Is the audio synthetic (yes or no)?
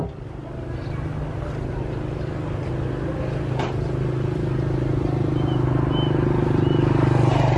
no